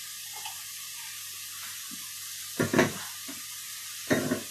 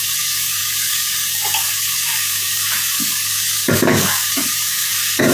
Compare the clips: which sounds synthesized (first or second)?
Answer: second